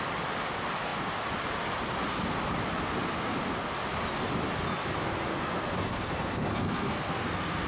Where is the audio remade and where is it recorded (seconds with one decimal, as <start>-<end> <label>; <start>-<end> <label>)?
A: 0.0-5.3 recorded; 5.3-7.7 remade